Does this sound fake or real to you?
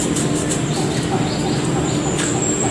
real